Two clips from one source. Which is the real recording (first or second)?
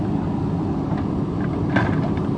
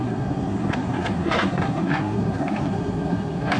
first